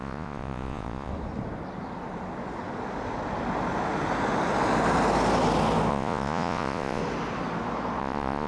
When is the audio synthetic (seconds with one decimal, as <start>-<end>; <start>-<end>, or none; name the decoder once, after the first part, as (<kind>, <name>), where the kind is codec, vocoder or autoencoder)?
0.0-1.1 (vocoder, Vocos); 5.9-7.0; 8.0-8.5